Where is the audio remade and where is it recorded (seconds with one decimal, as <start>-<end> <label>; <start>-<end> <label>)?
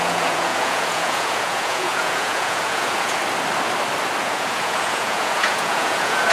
0.0-3.2 remade; 3.2-4.2 recorded; 4.2-6.3 remade